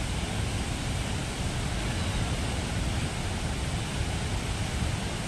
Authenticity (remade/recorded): recorded